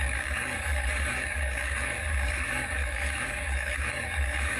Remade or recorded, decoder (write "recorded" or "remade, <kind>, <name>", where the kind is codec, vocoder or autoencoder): remade, codec, DAC